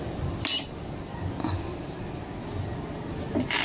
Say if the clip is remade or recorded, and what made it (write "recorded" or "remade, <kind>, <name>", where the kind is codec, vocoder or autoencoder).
remade, vocoder, BigVGAN v2